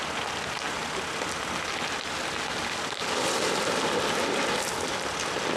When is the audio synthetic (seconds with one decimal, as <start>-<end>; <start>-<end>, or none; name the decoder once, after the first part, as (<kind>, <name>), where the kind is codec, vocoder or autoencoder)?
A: none